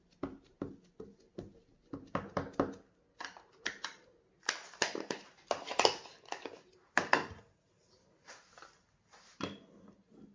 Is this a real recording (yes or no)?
yes